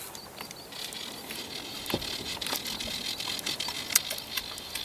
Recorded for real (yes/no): yes